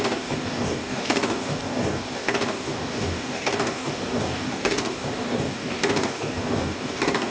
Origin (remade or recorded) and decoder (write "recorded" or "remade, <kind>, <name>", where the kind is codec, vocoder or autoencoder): remade, codec, DAC